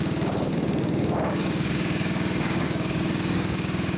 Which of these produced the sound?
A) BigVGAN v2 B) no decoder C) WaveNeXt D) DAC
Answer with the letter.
D